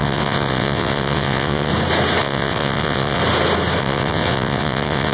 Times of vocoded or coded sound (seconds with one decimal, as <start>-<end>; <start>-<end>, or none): 0.0-1.7; 2.2-3.2; 3.8-5.1